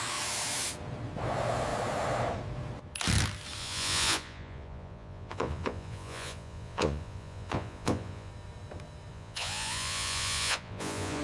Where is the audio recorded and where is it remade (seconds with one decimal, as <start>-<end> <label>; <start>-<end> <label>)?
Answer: 0.0-3.6 recorded; 3.6-8.3 remade; 8.3-9.1 recorded; 9.1-11.2 remade